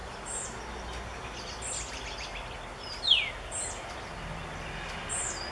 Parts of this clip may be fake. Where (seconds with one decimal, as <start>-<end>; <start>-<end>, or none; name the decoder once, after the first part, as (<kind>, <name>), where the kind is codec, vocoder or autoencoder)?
none